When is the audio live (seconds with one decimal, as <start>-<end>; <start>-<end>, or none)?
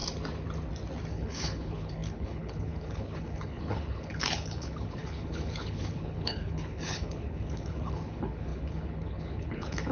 0.0-1.1